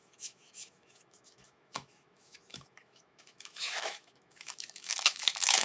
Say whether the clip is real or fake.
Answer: fake